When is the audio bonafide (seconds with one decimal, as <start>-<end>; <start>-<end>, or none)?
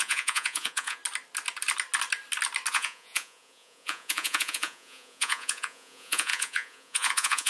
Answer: 1.0-2.7